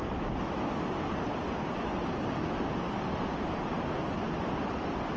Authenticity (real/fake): real